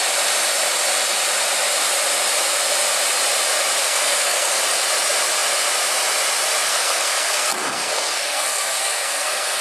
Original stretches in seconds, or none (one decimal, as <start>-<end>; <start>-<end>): 0.0-3.8; 4.6-6.7